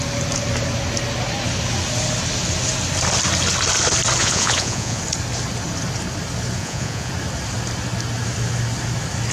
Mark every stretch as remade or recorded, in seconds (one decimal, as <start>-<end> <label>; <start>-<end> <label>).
0.0-4.2 recorded; 4.2-5.0 remade; 5.0-6.6 recorded; 6.6-7.1 remade; 7.1-9.3 recorded